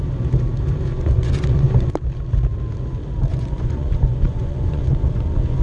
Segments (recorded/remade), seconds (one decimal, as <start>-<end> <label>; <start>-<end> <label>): 0.0-0.9 recorded; 0.9-1.9 remade; 1.9-3.3 recorded; 3.3-5.6 remade